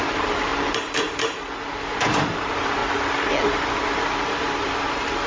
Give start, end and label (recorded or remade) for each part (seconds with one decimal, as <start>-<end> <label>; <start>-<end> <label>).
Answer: 0.0-0.5 remade; 0.5-2.1 recorded; 2.1-2.8 remade; 2.8-4.2 recorded; 4.2-5.3 remade